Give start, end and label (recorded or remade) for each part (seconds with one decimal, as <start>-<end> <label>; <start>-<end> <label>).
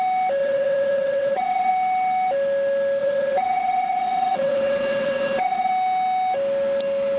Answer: 0.0-0.4 recorded; 0.4-1.7 remade; 1.7-3.0 recorded; 3.0-5.7 remade; 5.7-7.2 recorded